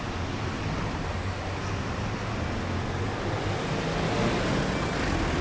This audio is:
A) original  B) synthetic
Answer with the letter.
A